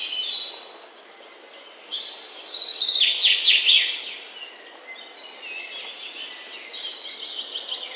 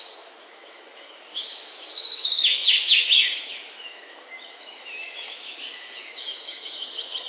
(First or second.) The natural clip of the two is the first